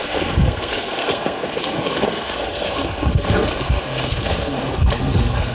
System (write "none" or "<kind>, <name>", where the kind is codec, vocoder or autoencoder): codec, SNAC